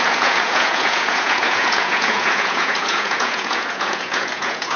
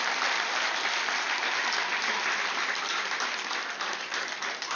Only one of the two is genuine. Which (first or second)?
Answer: second